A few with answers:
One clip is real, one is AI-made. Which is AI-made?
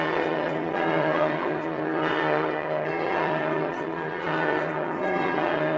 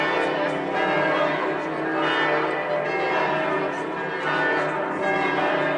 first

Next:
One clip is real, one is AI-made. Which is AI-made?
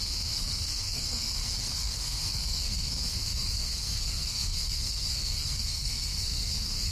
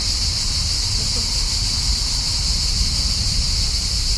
first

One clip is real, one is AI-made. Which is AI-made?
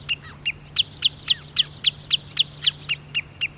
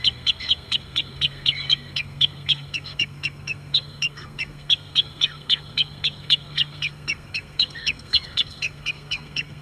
second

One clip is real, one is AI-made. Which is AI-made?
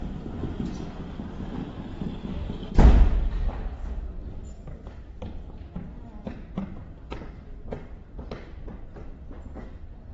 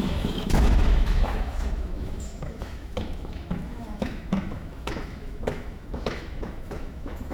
second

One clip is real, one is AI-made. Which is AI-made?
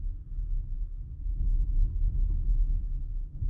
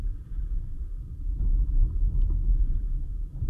second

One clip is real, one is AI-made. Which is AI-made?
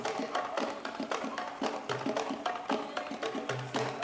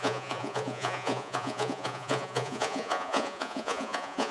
second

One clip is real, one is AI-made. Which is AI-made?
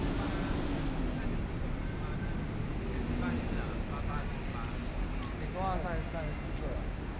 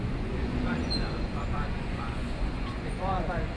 second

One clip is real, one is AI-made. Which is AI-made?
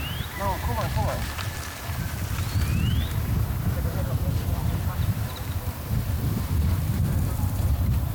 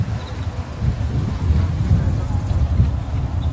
first